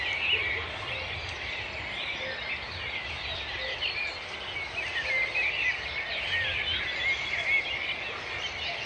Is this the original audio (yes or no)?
yes